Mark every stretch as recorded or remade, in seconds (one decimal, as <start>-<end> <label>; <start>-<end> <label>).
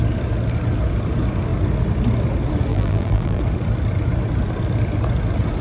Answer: 0.0-2.7 recorded; 2.7-3.4 remade; 3.4-5.6 recorded